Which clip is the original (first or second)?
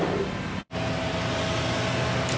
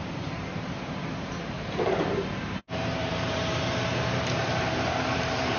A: first